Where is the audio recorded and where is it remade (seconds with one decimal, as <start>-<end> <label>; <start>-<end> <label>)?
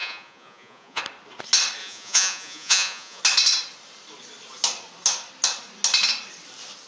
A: 0.0-1.0 remade; 1.0-1.8 recorded; 1.8-3.2 remade; 3.2-6.9 recorded